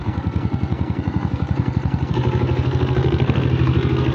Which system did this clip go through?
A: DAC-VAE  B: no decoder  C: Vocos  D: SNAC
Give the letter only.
D